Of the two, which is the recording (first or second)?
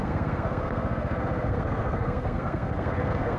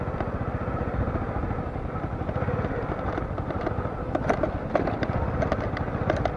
second